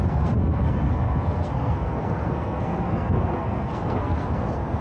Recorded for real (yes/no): no